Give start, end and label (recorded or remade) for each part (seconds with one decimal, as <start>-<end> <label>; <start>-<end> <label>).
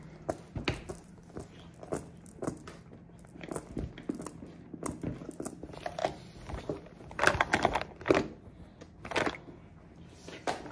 0.0-10.7 recorded